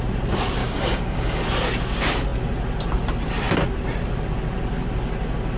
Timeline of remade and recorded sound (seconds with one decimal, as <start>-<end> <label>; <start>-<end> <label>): 0.0-0.6 recorded; 0.6-1.4 remade; 1.4-5.6 recorded